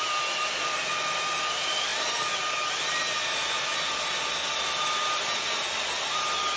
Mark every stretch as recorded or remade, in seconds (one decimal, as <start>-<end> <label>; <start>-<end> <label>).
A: 0.0-6.6 recorded